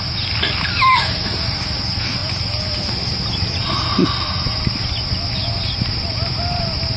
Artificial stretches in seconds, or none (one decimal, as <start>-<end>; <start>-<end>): none